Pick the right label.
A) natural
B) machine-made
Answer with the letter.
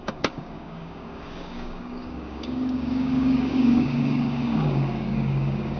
B